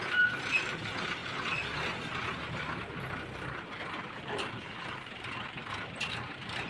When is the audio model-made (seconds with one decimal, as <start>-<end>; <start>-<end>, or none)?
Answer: 0.0-1.2; 4.0-6.7